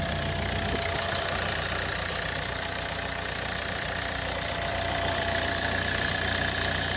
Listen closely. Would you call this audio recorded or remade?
remade